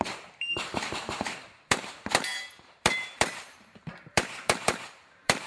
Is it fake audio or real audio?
fake